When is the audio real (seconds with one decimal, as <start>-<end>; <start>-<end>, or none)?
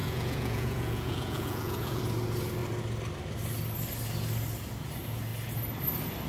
2.0-6.3